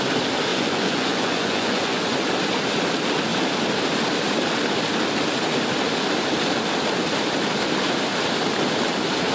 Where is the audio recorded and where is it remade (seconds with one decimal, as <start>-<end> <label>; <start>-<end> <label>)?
0.0-0.5 recorded; 0.5-2.0 remade; 2.0-9.3 recorded